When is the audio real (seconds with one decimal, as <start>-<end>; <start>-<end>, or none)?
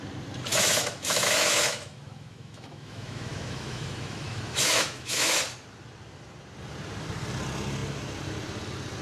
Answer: 0.0-0.5; 5.4-9.0